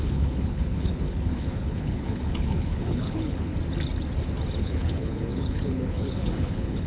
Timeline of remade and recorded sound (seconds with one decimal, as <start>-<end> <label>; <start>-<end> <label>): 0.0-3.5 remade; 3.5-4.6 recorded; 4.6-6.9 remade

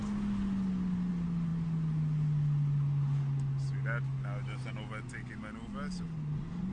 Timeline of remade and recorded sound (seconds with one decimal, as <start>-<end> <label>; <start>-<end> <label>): 0.0-6.7 recorded

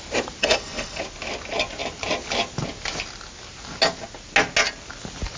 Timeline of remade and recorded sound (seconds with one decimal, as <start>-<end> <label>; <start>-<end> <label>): 0.0-0.4 recorded; 0.4-1.0 remade; 1.0-5.4 recorded

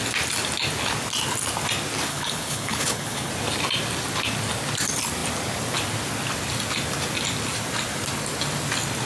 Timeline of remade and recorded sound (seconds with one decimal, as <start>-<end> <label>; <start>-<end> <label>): 0.0-2.1 recorded; 2.1-3.3 remade; 3.3-9.1 recorded

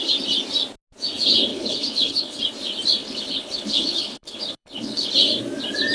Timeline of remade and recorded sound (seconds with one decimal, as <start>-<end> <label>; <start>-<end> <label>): 0.0-1.5 recorded; 1.5-2.4 remade; 2.4-3.0 recorded; 3.0-5.1 remade; 5.1-5.9 recorded